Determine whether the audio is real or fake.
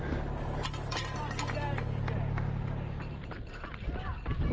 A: real